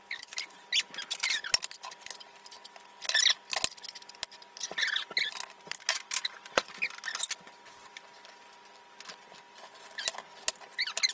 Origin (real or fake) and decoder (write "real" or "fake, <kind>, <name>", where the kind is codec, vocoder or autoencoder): real